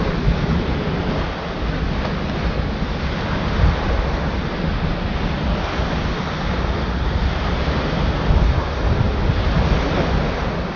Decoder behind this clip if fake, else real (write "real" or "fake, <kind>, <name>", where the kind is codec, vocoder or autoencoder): real